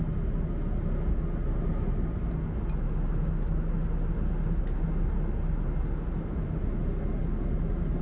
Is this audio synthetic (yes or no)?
no